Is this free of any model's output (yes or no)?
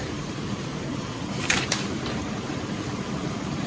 no